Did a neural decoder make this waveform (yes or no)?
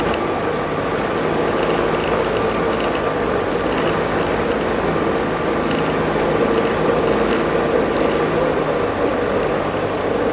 no